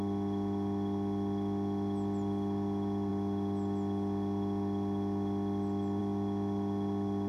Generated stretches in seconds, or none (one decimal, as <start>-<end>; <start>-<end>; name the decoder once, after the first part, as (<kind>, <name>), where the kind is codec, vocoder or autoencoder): none